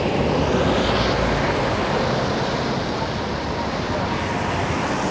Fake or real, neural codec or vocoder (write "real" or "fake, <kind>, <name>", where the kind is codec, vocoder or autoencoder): real